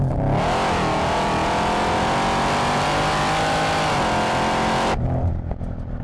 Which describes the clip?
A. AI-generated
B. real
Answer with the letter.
B